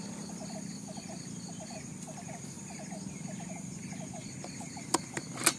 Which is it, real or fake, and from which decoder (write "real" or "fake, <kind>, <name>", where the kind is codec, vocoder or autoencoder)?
real